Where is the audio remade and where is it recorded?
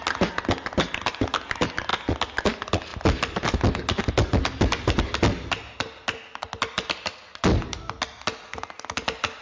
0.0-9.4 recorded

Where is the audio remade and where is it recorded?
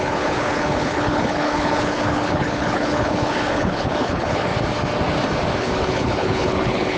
0.0-4.5 remade; 4.5-5.6 recorded; 5.6-7.0 remade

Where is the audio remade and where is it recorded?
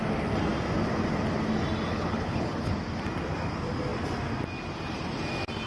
0.0-1.9 recorded; 1.9-2.7 remade; 2.7-5.7 recorded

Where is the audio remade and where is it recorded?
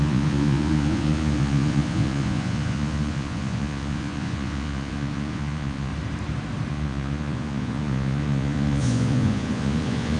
0.0-5.9 remade; 5.9-6.7 recorded; 6.7-10.2 remade